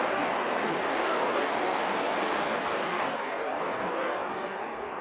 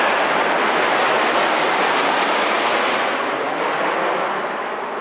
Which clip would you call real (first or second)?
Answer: second